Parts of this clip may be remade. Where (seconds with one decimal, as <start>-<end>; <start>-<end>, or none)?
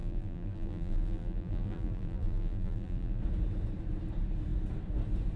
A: 0.0-3.2